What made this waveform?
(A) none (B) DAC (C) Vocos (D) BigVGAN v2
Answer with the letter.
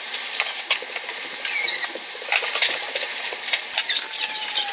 D